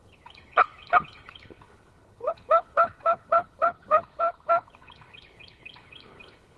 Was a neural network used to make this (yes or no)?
yes